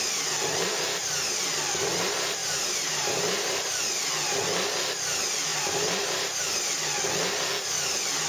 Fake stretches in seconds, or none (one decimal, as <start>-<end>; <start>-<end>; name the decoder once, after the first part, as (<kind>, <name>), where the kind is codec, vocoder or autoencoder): 2.4-3.8 (vocoder, BigVGAN v2); 5.5-6.4